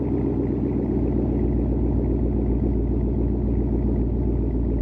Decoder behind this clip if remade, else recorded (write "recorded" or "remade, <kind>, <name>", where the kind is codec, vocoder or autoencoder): recorded